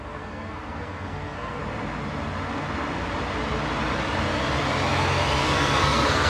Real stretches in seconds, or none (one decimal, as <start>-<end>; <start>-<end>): 1.6-5.4